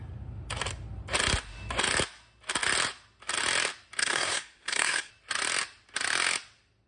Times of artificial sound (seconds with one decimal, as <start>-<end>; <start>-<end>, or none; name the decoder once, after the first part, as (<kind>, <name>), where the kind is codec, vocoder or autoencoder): 4.0-5.1 (codec, SNAC)

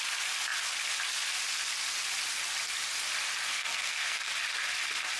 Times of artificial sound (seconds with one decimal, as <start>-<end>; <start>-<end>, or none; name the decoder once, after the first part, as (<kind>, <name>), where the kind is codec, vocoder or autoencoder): 3.5-4.3 (codec, SNAC)

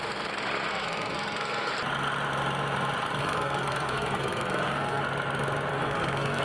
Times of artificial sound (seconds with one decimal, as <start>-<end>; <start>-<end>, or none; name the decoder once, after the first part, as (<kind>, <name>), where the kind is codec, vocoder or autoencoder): 0.7-1.7 (codec, SNAC); 3.2-5.0; 5.7-6.4

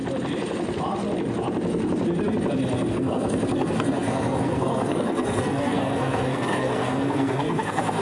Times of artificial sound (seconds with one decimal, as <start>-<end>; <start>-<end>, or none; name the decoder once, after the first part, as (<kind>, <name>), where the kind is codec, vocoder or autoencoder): 2.9-8.0 (codec, SNAC)

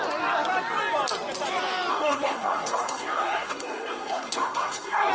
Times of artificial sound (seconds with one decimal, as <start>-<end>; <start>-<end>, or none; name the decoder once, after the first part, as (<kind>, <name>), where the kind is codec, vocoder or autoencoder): 1.9-5.1 (codec, SNAC)

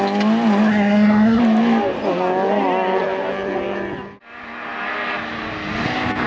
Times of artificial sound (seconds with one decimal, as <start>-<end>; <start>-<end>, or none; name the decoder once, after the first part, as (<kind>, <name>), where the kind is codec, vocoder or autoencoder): 0.7-1.4 (codec, SNAC)

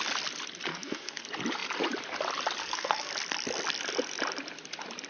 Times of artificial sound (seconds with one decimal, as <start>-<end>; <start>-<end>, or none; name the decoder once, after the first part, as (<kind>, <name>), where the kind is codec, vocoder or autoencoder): 0.7-1.2 (codec, SNAC); 2.6-3.1